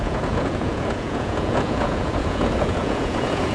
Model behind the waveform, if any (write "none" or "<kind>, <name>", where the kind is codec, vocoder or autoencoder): vocoder, Vocos